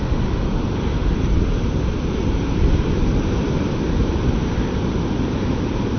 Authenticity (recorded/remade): recorded